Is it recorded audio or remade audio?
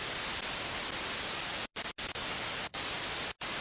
recorded